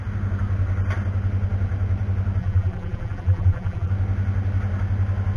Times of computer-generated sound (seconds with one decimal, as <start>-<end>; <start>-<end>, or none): 2.4-3.9